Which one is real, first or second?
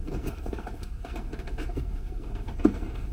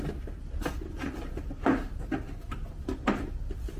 second